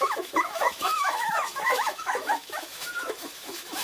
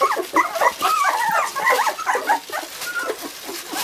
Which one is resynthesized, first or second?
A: first